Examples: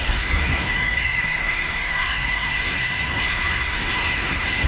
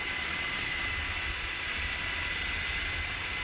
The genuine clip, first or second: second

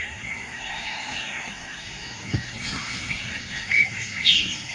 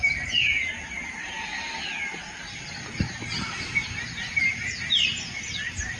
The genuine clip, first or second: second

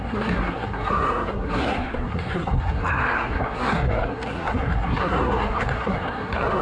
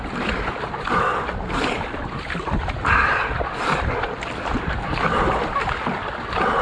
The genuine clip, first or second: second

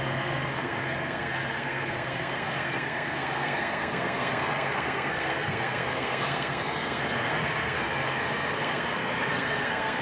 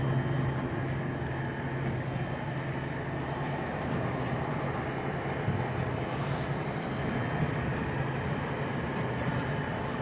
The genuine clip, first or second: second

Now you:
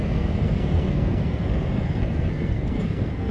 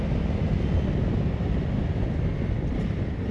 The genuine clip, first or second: second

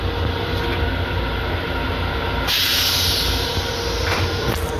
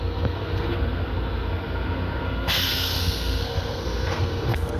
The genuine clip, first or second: first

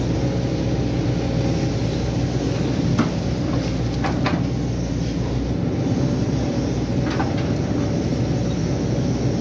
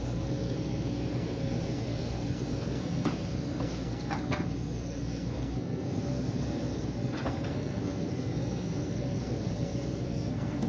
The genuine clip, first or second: first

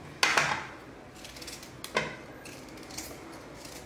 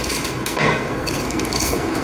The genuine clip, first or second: first